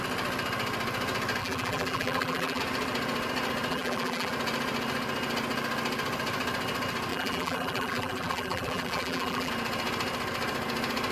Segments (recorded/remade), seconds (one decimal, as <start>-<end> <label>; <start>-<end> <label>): 0.0-1.4 recorded; 1.4-2.6 remade; 2.6-3.7 recorded; 3.7-4.3 remade; 4.3-7.1 recorded; 7.1-9.5 remade; 9.5-11.1 recorded